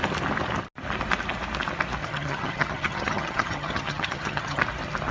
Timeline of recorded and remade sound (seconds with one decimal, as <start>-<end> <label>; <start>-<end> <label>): 0.0-2.0 recorded; 2.0-4.6 remade; 4.6-5.1 recorded